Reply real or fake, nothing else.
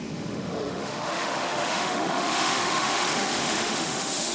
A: fake